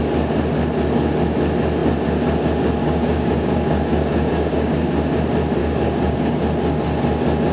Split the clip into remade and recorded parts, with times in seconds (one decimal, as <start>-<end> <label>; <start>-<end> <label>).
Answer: 0.0-2.8 recorded; 2.8-4.9 remade; 4.9-5.6 recorded; 5.6-6.4 remade; 6.4-7.5 recorded